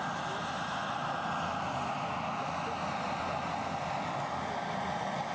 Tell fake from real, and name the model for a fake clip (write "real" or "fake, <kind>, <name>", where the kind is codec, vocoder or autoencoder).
real